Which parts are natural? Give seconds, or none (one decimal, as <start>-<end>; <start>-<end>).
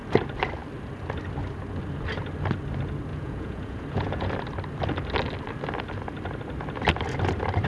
0.0-3.1; 4.3-7.7